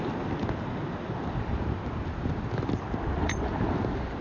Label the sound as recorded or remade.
recorded